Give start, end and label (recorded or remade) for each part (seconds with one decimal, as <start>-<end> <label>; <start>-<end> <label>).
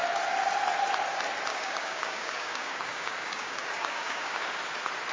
0.0-1.5 recorded; 1.5-4.6 remade; 4.6-5.1 recorded